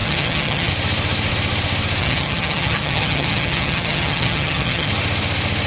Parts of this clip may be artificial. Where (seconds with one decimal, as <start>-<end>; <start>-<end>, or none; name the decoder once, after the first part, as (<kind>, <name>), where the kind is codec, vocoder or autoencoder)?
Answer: 0.0-0.7 (vocoder, HiFi-GAN); 2.0-4.9